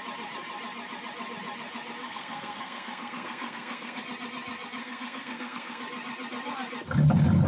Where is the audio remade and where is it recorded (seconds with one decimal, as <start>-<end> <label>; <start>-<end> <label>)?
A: 0.0-2.0 recorded; 2.0-4.0 remade; 4.0-4.8 recorded; 4.8-5.8 remade; 5.8-7.5 recorded